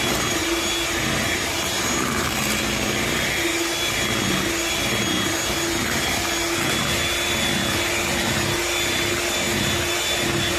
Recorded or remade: recorded